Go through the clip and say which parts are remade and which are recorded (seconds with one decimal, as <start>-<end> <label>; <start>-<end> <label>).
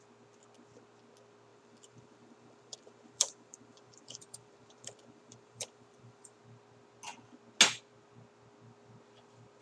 0.0-1.5 recorded; 1.5-6.4 remade; 6.4-9.6 recorded